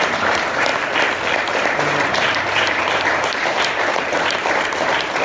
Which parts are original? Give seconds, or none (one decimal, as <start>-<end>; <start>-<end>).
0.7-1.5